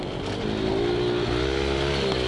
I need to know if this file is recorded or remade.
recorded